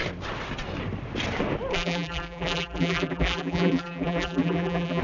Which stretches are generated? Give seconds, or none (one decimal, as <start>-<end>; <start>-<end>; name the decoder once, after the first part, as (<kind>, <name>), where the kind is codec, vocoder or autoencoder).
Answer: 1.7-5.0 (vocoder, BigVGAN v2)